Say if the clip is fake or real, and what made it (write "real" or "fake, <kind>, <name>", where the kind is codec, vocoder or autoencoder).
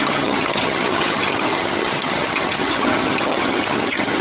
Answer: fake, vocoder, HiFi-GAN